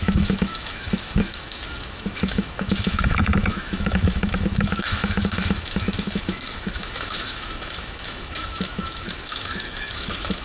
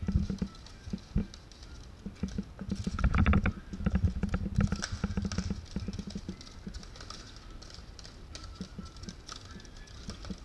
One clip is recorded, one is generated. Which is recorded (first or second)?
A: second